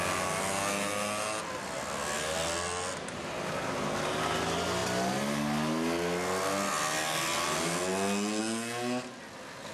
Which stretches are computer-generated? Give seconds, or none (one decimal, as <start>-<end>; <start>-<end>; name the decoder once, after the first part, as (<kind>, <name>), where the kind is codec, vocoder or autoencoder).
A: none